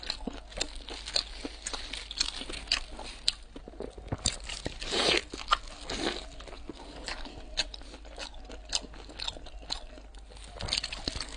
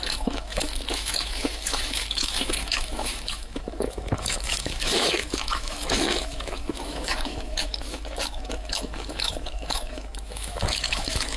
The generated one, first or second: second